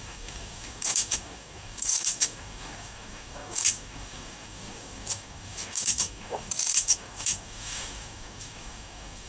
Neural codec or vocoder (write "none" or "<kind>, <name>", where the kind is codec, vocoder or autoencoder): codec, DAC